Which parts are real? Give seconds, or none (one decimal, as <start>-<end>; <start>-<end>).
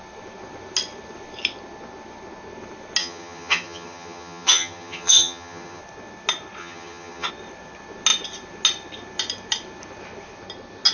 0.0-3.0; 5.8-6.6; 7.3-10.9